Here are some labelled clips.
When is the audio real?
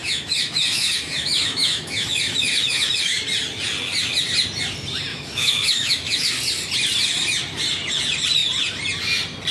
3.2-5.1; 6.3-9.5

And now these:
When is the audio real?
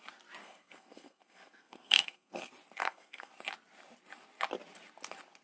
0.0-0.4; 2.4-2.8; 3.3-5.4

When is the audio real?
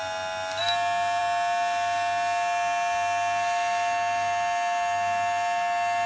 0.0-6.1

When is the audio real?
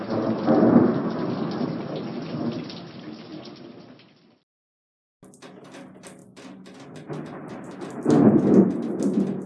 0.0-9.5